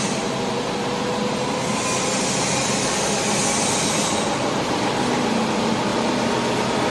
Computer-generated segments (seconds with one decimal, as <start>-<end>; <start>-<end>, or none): none